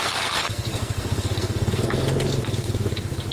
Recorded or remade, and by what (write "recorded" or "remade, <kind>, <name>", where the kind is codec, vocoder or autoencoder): remade, codec, SNAC